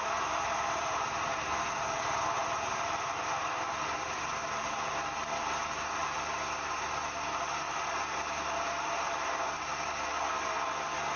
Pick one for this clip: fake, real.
real